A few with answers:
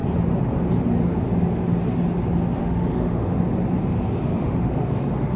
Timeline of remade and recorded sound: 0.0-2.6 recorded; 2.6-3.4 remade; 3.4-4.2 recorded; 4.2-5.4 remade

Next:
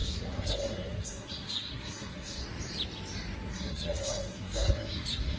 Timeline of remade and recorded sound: 0.0-2.4 remade; 2.4-3.5 recorded; 3.5-5.4 remade

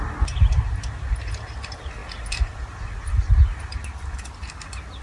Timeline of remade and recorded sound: 0.0-5.0 recorded

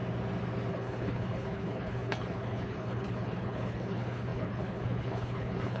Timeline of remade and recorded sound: 0.0-0.7 recorded; 0.7-5.8 remade

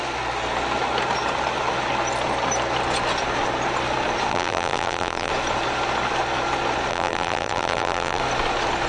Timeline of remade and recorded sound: 0.0-4.3 recorded; 4.3-5.3 remade; 5.3-6.9 recorded; 6.9-8.2 remade; 8.2-8.9 recorded